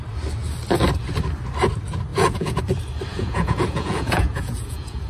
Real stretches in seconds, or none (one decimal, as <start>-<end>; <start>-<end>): 0.0-2.1; 2.6-3.1